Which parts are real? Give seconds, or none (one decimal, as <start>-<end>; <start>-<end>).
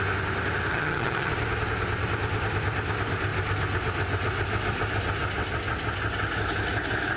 0.0-0.7; 1.3-7.2